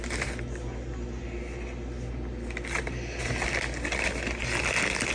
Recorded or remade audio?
recorded